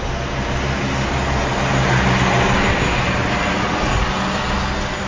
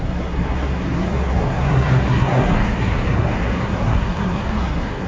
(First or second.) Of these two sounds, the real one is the first